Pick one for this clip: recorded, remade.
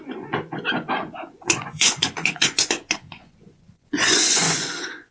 remade